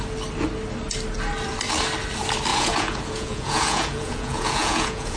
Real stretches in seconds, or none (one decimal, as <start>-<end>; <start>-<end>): 0.0-2.5